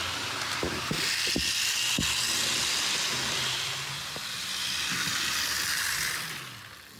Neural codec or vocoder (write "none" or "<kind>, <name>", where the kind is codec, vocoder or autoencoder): none